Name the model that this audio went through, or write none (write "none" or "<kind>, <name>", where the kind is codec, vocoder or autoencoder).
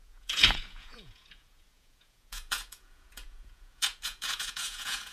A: vocoder, Vocos